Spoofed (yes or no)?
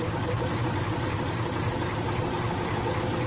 no